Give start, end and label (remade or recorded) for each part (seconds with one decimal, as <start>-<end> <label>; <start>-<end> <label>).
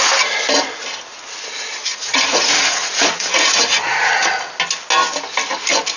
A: 0.0-1.8 recorded; 1.8-3.8 remade; 3.8-6.0 recorded